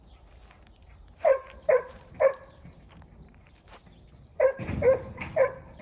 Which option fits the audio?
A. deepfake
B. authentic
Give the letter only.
A